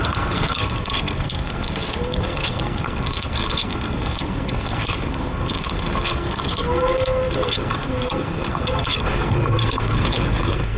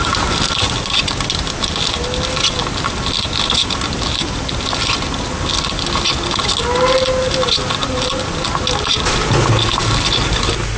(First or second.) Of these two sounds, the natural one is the second